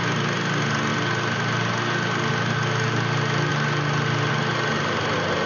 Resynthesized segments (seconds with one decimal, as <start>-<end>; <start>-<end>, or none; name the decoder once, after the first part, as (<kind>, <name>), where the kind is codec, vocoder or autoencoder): none